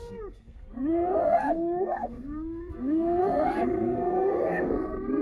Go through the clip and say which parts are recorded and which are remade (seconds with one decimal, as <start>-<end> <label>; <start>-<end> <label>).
0.0-5.2 remade